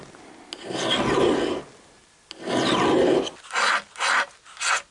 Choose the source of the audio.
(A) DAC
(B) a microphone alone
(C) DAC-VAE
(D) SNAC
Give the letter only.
B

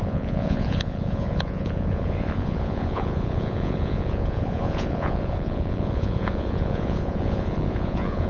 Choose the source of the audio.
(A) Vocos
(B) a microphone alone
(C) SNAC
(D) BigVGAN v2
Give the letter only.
A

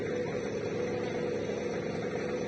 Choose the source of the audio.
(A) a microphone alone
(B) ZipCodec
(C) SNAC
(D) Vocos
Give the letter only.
A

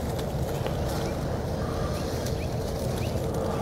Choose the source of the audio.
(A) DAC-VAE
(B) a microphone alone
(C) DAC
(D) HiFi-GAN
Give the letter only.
B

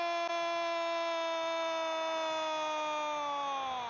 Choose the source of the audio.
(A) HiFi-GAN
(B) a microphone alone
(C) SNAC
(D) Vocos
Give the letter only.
B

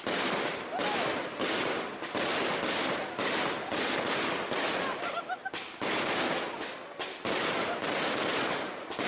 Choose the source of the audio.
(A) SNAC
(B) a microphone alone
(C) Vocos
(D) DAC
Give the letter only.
B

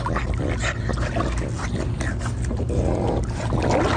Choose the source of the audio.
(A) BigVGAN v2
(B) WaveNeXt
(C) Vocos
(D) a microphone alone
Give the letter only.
D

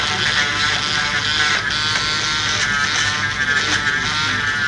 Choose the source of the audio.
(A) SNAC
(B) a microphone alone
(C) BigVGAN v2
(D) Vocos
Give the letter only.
B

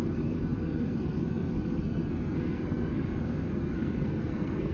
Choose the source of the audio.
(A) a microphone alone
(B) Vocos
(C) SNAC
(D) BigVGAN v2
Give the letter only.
C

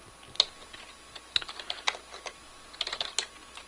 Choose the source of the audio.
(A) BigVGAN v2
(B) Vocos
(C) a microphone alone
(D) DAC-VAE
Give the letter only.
C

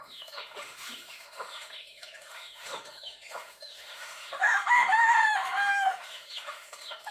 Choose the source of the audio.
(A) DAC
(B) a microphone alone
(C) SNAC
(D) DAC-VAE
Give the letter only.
D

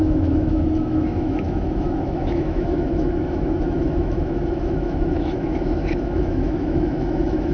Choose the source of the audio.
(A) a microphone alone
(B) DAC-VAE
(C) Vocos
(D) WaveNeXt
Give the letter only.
B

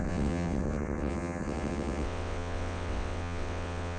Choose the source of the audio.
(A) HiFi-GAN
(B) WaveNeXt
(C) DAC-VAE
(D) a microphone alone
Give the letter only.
B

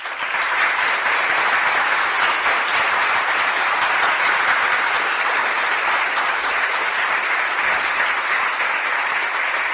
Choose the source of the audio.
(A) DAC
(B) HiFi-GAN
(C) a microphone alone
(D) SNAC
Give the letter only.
C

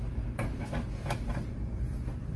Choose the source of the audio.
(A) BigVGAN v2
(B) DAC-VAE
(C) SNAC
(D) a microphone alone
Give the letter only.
A